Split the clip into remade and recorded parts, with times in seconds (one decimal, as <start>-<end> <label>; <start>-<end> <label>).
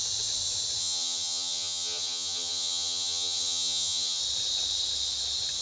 0.0-0.8 recorded; 0.8-4.2 remade; 4.2-5.6 recorded